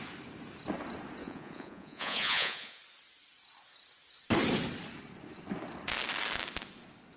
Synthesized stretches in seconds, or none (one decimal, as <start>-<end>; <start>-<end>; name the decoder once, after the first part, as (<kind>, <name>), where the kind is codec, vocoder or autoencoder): 1.2-2.8 (vocoder, Vocos)